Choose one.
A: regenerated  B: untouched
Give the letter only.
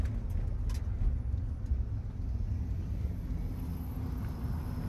B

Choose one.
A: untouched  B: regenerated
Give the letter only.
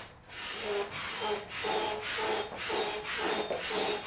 A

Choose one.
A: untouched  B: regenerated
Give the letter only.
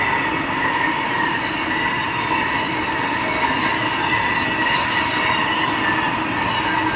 A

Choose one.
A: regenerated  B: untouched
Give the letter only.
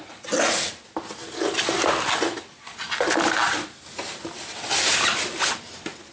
B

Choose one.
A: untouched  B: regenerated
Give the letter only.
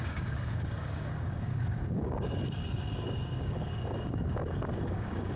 B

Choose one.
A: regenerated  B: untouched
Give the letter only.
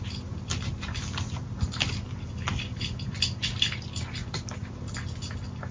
B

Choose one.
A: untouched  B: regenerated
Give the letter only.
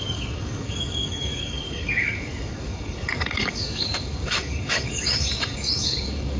B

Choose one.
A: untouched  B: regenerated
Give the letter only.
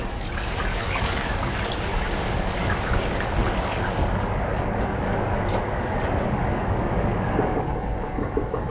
B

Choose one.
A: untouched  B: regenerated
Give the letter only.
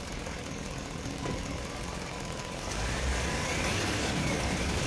B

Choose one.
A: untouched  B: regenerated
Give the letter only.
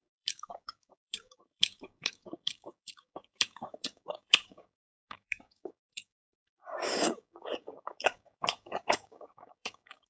B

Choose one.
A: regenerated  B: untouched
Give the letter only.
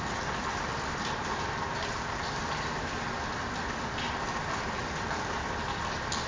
B